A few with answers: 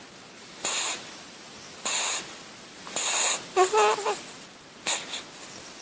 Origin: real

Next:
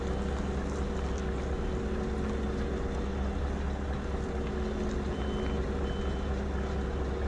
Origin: real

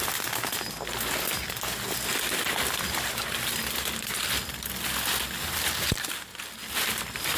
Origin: real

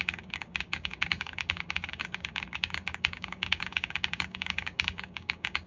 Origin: fake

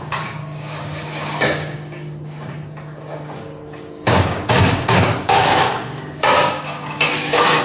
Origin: fake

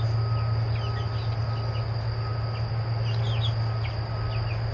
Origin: real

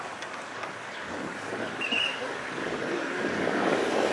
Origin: fake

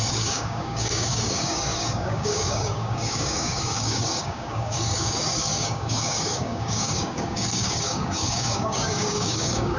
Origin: fake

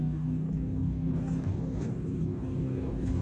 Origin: fake